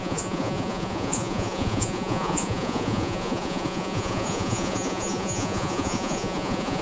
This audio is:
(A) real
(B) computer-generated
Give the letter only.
B